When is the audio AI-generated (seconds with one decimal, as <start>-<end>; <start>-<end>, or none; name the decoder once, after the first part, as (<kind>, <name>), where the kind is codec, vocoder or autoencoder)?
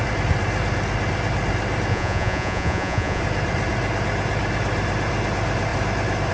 1.9-3.2 (vocoder, Vocos)